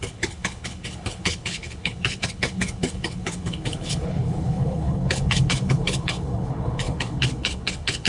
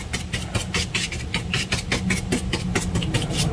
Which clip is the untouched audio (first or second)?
second